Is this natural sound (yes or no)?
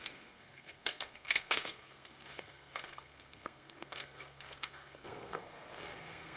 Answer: no